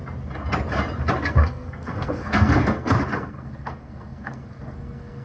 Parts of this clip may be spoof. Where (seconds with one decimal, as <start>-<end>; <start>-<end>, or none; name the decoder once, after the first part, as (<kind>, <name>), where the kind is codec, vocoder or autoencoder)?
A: 1.2-5.2 (codec, SNAC)